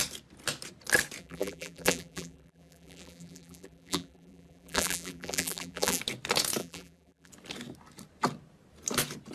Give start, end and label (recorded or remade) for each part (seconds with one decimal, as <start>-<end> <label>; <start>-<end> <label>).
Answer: 0.0-1.2 recorded; 1.2-6.0 remade; 6.0-6.6 recorded; 6.6-7.3 remade; 7.3-9.3 recorded